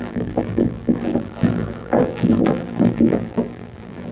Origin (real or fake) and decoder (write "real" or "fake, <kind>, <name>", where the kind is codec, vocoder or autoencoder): fake, vocoder, BigVGAN v2